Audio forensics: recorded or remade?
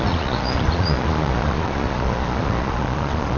remade